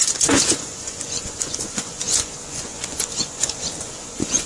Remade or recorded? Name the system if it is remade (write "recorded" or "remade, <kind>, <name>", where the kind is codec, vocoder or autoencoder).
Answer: remade, vocoder, Vocos